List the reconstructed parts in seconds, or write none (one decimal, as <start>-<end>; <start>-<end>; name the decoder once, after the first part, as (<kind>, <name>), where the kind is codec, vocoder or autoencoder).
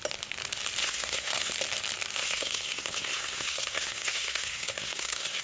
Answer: 0.8-1.5 (codec, SNAC); 2.2-5.4